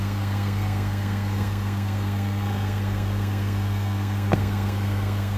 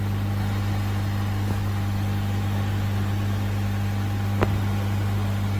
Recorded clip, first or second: second